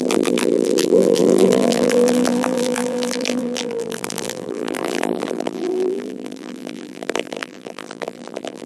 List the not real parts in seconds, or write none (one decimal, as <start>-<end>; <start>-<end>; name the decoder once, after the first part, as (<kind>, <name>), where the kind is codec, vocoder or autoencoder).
0.0-8.7 (vocoder, BigVGAN v2)